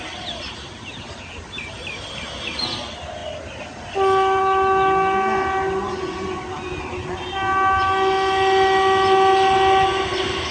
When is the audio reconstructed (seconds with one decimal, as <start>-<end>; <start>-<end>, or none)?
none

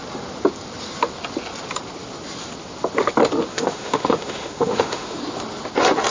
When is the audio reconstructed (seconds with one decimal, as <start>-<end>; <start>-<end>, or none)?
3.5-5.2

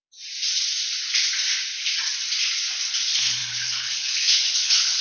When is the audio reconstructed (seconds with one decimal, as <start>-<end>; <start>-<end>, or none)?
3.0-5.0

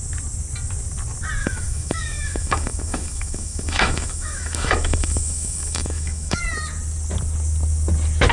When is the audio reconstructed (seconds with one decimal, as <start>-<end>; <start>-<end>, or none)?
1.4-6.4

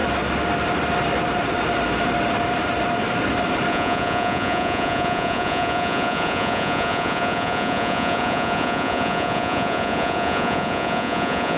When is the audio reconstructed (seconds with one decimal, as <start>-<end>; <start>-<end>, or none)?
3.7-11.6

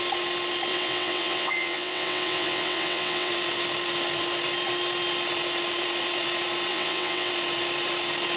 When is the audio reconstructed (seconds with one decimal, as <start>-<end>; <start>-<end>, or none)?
0.7-3.3; 6.7-7.3

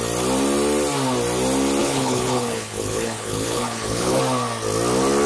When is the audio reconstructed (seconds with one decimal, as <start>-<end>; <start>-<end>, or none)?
1.8-4.2